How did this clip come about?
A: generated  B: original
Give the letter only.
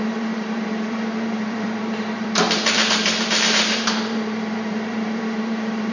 A